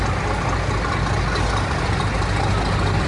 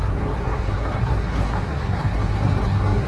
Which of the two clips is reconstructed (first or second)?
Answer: second